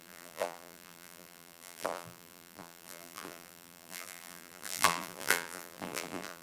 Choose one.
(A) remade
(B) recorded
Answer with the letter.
A